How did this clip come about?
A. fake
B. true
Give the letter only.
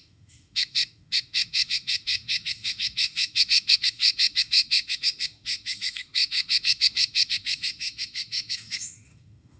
A